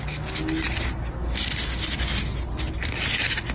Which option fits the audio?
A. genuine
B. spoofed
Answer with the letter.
A